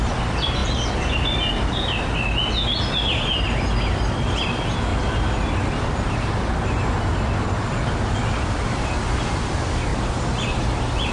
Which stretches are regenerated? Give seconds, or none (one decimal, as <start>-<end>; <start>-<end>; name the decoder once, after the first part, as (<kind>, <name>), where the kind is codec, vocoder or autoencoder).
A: none